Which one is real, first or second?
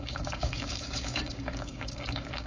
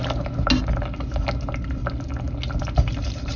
second